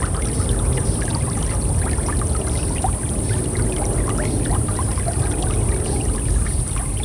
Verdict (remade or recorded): recorded